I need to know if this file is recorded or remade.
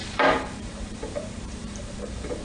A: remade